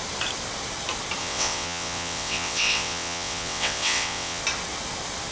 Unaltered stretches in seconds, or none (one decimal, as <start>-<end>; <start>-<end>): 0.0-1.2; 4.4-5.3